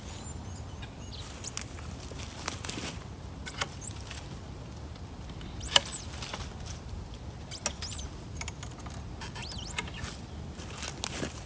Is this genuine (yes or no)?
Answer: yes